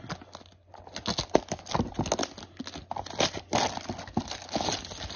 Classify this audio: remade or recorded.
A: recorded